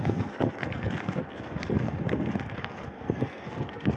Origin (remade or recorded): remade